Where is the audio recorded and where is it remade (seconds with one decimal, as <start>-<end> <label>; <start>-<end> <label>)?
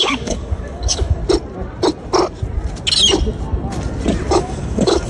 0.0-1.2 remade; 1.2-4.3 recorded; 4.3-5.1 remade